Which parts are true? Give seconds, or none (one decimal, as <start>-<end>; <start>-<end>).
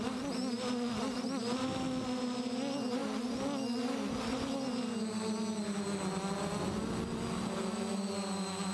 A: 0.0-8.7